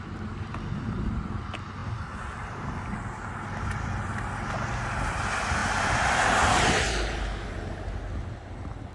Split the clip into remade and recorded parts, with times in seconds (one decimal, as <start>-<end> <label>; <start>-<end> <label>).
0.0-8.9 recorded